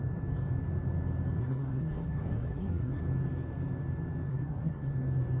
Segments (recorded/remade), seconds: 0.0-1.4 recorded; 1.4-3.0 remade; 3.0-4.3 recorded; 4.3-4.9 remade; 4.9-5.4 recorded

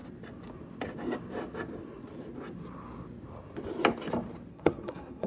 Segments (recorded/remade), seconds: 0.0-4.5 recorded; 4.5-5.3 remade

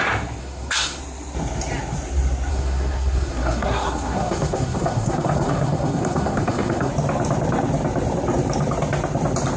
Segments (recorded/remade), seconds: 0.0-0.4 recorded; 0.4-1.0 remade; 1.0-2.5 recorded; 2.5-6.9 remade; 6.9-9.6 recorded

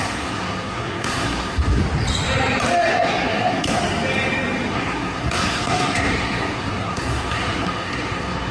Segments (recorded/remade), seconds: 0.0-1.8 remade; 1.8-2.9 recorded; 2.9-3.8 remade; 3.8-4.7 recorded; 4.7-8.5 remade

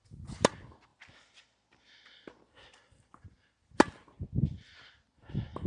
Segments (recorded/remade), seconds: 0.0-5.7 recorded

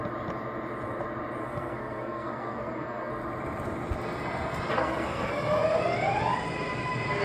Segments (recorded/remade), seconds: 0.0-1.4 recorded; 1.4-3.1 remade; 3.1-4.7 recorded; 4.7-5.3 remade; 5.3-7.2 recorded